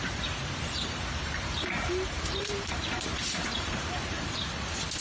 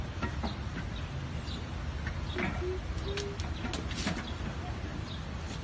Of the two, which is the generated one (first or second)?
first